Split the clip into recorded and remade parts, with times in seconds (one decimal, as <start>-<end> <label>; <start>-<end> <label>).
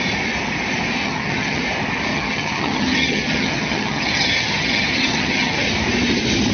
0.0-1.0 recorded; 1.0-1.6 remade; 1.6-2.1 recorded; 2.1-5.7 remade; 5.7-6.5 recorded